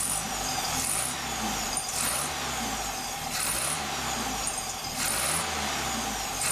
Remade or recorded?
recorded